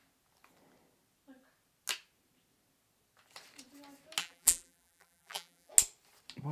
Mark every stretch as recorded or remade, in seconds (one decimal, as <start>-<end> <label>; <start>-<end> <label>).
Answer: 0.0-4.2 recorded; 4.2-5.7 remade; 5.7-6.5 recorded